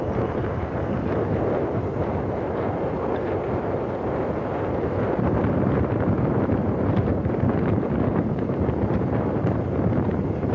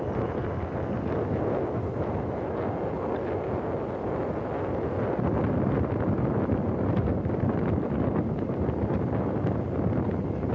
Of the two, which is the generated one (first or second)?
first